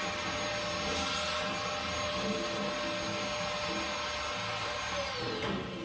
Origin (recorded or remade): recorded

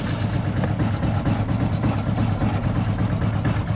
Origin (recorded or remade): recorded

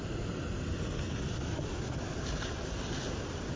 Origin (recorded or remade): recorded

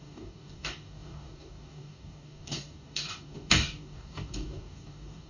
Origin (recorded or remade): remade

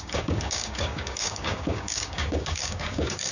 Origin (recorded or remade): remade